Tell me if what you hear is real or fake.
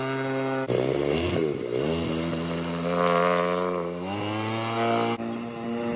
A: real